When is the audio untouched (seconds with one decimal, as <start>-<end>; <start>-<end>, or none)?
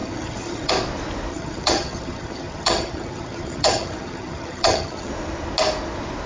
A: 0.7-1.3; 5.1-6.3